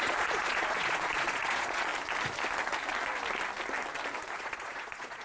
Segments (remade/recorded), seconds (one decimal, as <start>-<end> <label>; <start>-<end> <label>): 0.0-1.9 remade; 1.9-4.4 recorded; 4.4-5.2 remade